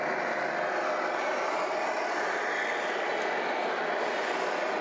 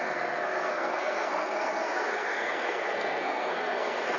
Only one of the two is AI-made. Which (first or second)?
second